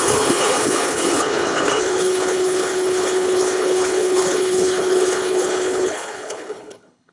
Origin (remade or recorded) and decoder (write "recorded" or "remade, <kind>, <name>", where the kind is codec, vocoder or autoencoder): remade, codec, HILCodec